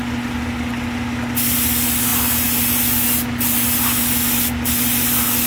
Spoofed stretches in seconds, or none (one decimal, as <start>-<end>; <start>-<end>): none